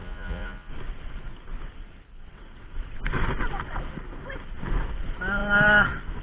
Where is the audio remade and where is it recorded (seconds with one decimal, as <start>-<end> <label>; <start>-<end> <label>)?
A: 0.0-0.7 remade; 0.7-6.2 recorded